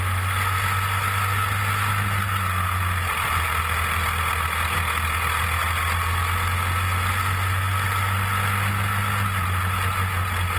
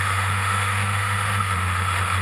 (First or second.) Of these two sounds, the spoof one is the second